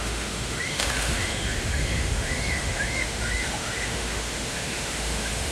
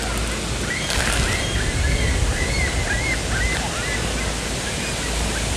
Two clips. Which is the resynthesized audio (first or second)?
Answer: first